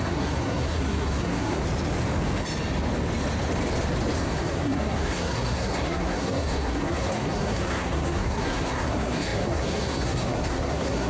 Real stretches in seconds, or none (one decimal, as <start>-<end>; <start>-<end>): 1.6-4.2